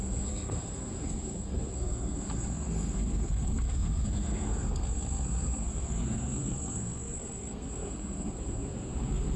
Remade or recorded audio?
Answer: remade